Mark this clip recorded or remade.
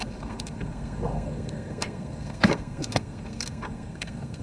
remade